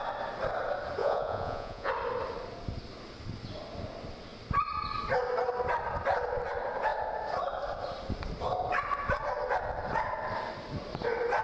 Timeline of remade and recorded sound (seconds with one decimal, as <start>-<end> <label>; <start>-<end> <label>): 0.0-1.0 recorded; 1.0-1.9 remade; 1.9-11.4 recorded